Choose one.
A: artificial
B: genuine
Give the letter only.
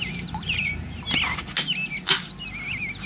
B